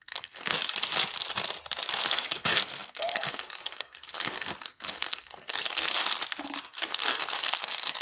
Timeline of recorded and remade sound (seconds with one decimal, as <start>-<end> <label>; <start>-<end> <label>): 0.0-0.6 remade; 0.6-2.1 recorded; 2.1-6.0 remade; 6.0-6.6 recorded; 6.6-8.0 remade